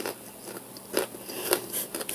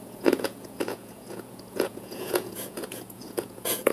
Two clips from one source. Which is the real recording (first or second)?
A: first